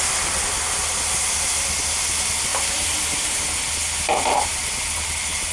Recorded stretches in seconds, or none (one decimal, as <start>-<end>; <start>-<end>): 0.0-2.5; 3.4-4.1; 4.6-5.5